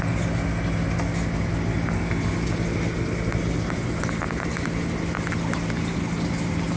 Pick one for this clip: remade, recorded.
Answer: recorded